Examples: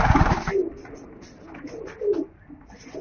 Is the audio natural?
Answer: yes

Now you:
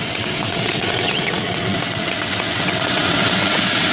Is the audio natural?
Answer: no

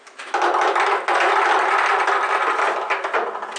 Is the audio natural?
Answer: yes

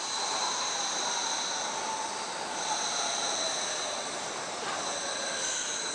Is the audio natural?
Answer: yes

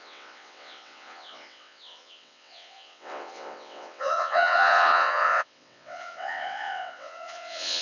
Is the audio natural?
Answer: no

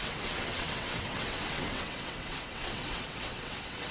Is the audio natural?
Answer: no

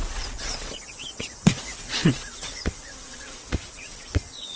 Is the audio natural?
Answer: no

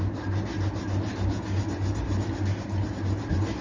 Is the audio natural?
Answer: yes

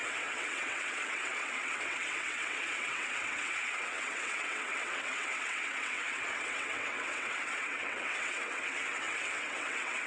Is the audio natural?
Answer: no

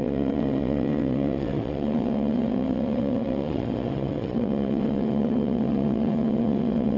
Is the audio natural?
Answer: no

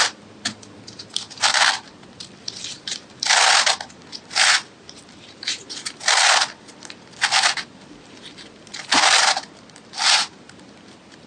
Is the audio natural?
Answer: yes